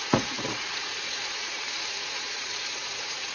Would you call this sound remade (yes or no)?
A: yes